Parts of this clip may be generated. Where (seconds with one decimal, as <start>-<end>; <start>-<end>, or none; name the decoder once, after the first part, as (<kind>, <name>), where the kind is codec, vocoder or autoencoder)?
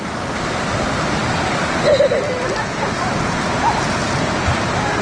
none